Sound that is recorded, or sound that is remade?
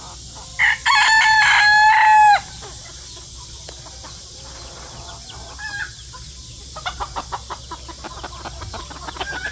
recorded